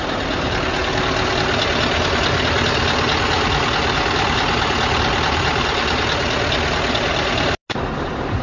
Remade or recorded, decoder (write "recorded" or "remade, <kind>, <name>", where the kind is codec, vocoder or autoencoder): recorded